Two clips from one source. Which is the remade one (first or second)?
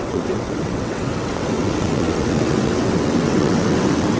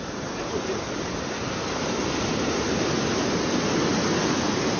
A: first